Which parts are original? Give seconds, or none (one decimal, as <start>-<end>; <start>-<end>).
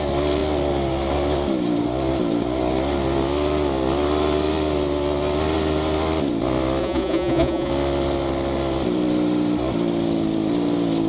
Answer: 0.0-6.8; 7.7-11.1